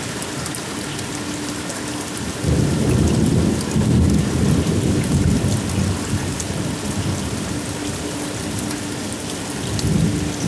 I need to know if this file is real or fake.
real